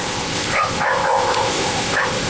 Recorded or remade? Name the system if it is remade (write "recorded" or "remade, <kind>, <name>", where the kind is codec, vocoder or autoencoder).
remade, codec, ZipCodec